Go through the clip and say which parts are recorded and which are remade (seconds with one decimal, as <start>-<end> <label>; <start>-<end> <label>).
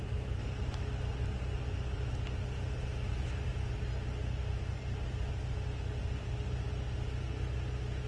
0.0-8.1 recorded